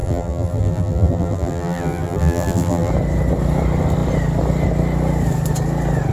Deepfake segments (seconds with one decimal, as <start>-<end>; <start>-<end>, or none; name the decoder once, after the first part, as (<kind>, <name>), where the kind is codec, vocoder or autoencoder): 0.0-2.9 (vocoder, BigVGAN v2)